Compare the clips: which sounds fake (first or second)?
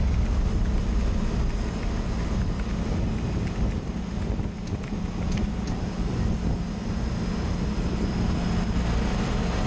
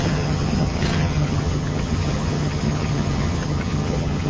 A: second